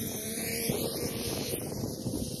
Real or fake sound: fake